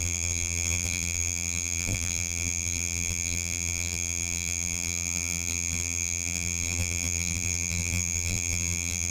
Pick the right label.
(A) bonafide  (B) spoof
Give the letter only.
B